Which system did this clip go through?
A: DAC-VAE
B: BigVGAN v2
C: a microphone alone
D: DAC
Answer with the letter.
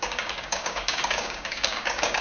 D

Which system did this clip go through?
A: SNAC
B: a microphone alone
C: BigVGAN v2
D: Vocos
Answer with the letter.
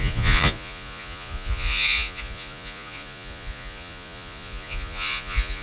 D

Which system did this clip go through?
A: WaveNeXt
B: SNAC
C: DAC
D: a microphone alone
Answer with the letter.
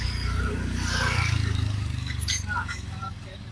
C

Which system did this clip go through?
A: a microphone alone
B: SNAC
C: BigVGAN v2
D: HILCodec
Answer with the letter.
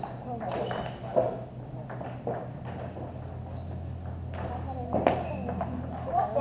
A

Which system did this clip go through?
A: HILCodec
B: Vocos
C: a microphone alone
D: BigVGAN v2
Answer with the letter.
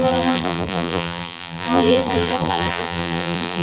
D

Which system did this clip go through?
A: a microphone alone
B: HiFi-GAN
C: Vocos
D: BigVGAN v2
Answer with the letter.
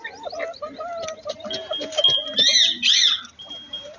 A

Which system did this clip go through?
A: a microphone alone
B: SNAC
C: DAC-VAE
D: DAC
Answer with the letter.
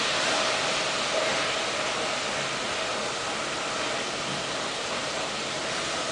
A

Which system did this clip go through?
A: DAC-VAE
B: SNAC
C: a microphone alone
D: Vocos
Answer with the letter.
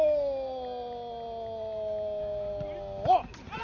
C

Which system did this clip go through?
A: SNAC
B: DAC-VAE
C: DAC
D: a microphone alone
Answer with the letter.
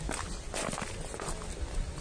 D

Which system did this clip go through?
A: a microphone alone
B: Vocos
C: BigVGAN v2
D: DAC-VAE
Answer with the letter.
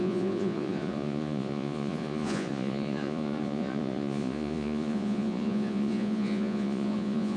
B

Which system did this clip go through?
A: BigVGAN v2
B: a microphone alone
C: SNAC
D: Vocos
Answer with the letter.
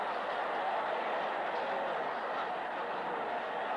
B